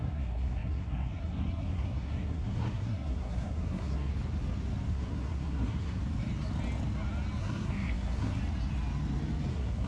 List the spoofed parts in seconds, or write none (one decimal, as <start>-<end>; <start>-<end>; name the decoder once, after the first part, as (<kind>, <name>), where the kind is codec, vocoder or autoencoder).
0.0-4.1 (codec, SNAC); 4.9-6.0; 7.4-8.4; 9.5-9.9